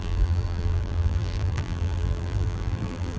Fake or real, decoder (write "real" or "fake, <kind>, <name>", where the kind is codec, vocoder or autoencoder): fake, vocoder, BigVGAN v2